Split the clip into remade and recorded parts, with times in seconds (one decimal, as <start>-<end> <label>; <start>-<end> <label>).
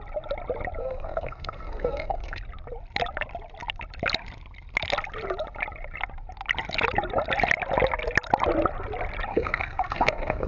0.0-0.8 recorded; 0.8-2.4 remade; 2.4-9.3 recorded; 9.3-10.5 remade